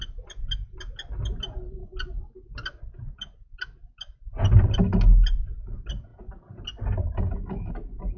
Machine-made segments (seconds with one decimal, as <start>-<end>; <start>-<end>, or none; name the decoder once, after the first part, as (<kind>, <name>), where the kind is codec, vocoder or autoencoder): none